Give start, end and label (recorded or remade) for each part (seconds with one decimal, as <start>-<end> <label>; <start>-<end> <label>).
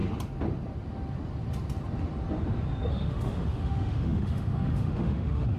0.0-2.9 recorded; 2.9-5.6 remade